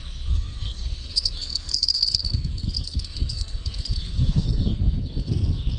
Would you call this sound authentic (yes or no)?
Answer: no